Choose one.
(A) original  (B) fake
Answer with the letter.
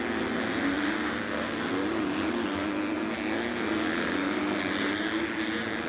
A